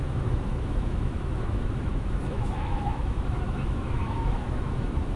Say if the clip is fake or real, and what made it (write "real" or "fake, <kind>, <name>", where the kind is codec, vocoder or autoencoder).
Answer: fake, autoencoder, DAC-VAE